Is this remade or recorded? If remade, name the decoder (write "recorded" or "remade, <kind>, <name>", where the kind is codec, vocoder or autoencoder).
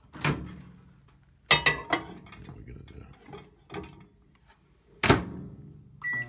recorded